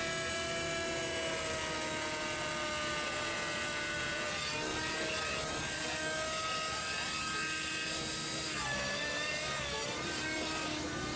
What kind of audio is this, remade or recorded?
recorded